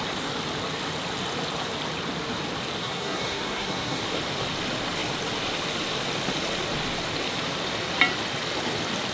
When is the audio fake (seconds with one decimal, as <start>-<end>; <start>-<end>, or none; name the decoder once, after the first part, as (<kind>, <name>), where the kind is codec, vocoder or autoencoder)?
2.8-4.0 (codec, SNAC)